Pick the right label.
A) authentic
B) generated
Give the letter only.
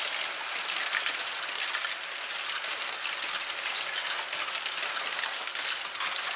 A